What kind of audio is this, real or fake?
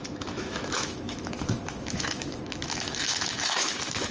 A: fake